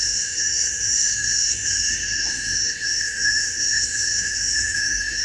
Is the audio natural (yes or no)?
no